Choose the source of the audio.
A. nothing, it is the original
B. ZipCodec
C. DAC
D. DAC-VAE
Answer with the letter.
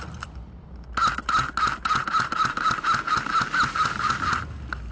A